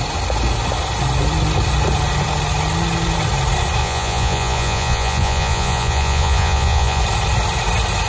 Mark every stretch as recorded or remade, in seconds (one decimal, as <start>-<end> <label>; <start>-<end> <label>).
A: 0.0-3.8 recorded; 3.8-7.0 remade; 7.0-8.1 recorded